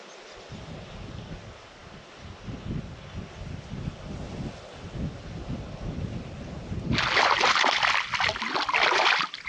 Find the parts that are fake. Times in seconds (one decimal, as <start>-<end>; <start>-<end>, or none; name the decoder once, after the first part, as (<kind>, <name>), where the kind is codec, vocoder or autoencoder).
none